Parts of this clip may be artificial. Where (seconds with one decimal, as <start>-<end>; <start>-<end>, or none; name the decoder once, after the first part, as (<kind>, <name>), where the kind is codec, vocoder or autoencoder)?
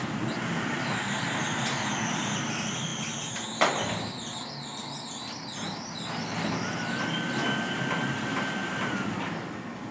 none